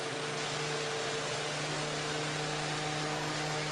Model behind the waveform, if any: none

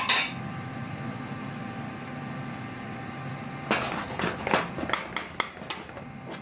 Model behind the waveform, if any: none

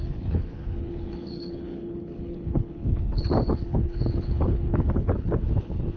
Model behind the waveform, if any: codec, HILCodec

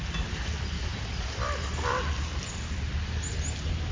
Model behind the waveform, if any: none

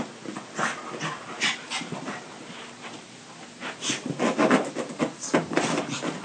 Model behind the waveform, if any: none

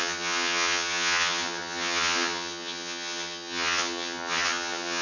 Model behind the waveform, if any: vocoder, HiFi-GAN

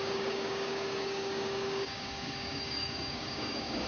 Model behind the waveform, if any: codec, DAC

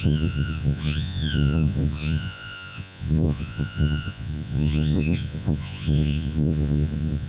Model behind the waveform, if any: vocoder, Vocos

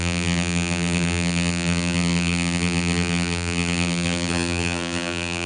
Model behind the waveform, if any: vocoder, BigVGAN v2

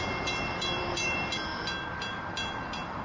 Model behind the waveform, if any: vocoder, BigVGAN v2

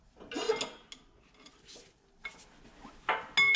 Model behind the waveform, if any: none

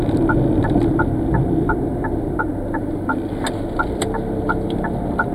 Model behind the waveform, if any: none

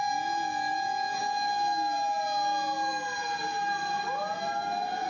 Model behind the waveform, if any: none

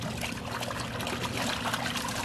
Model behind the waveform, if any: none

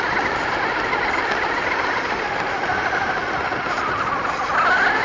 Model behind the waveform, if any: none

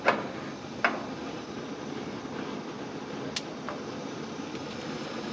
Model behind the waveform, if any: none